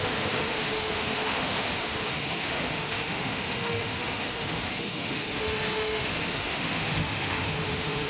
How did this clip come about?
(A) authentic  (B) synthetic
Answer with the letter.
B